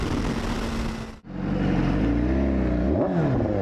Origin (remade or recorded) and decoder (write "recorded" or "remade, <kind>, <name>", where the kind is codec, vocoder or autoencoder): recorded